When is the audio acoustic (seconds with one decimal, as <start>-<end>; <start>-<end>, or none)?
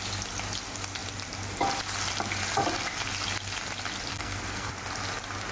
0.0-4.1; 4.7-5.5